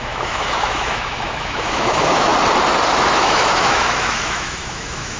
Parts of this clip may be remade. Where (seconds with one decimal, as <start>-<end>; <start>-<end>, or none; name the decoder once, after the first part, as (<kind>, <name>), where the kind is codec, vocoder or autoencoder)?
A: 0.0-2.3 (autoencoder, DAC-VAE); 2.9-5.2